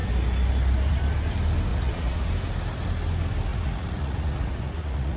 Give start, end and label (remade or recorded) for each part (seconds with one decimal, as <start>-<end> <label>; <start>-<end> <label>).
0.0-1.7 recorded; 1.7-2.3 remade; 2.3-3.5 recorded; 3.5-5.2 remade